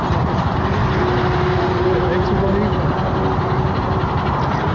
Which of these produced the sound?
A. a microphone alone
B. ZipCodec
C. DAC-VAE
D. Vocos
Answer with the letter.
A